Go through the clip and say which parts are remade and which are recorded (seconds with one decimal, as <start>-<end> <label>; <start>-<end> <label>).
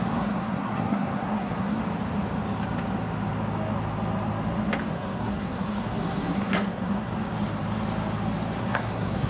0.0-1.8 remade; 1.8-4.9 recorded; 4.9-7.1 remade; 7.1-8.6 recorded; 8.6-9.3 remade